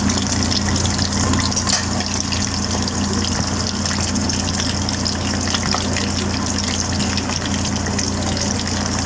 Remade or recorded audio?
recorded